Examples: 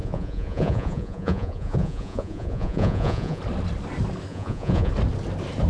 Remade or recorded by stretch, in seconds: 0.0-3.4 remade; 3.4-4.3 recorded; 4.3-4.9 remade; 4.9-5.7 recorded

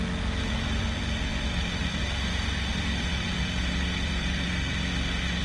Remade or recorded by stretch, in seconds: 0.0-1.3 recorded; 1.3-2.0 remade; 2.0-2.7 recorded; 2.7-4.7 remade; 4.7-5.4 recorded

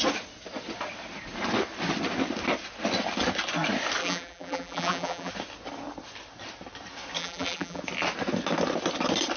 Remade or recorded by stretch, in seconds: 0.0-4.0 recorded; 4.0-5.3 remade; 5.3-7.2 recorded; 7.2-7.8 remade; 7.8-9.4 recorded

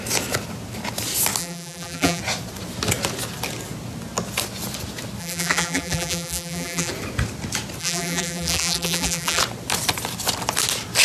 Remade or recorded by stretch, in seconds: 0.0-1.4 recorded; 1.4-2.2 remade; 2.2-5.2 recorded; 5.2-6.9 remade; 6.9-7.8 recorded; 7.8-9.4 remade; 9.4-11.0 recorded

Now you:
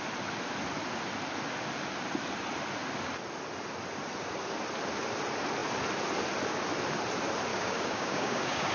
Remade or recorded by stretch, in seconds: 0.0-7.5 recorded; 7.5-8.7 remade

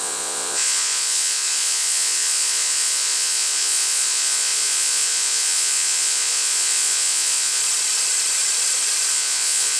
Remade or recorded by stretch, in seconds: 0.0-7.6 remade; 7.6-9.1 recorded; 9.1-9.8 remade

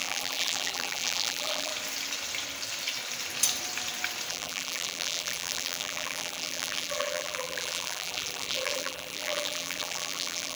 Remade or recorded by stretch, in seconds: 0.0-1.7 remade; 1.7-4.3 recorded; 4.3-10.6 remade